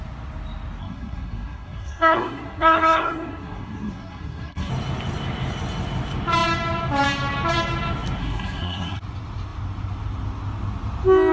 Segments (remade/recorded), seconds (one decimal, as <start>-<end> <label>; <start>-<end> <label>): 0.0-0.8 recorded; 0.8-4.7 remade; 4.7-8.2 recorded; 8.2-9.0 remade; 9.0-11.3 recorded